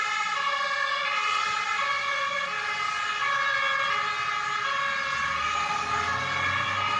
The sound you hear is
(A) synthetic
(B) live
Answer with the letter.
B